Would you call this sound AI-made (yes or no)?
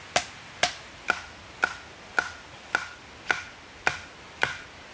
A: no